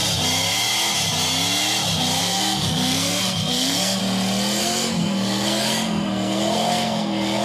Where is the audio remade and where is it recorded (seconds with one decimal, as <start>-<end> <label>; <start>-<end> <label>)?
0.0-2.2 recorded; 2.2-4.0 remade; 4.0-4.6 recorded; 4.6-7.4 remade